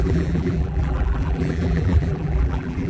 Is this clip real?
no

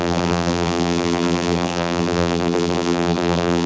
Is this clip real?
no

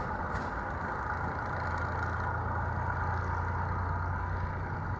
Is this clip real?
yes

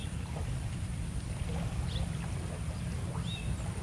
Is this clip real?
yes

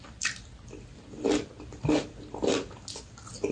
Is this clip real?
yes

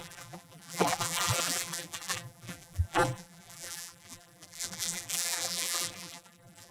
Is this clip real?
no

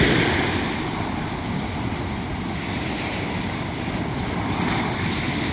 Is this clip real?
yes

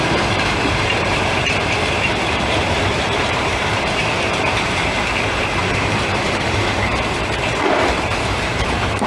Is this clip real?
no